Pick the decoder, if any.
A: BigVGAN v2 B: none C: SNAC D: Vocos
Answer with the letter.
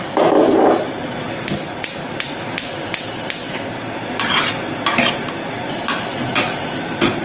B